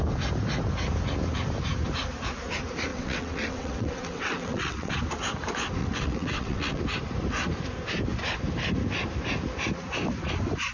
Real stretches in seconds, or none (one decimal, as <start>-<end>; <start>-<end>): 0.0-2.9; 4.9-5.8; 6.8-10.7